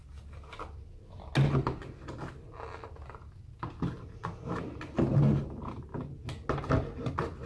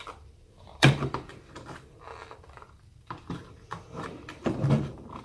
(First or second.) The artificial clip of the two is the second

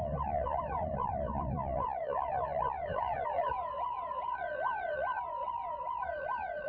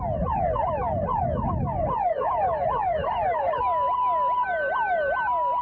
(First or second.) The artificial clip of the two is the first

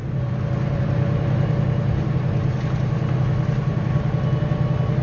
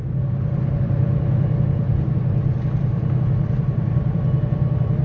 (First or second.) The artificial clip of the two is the second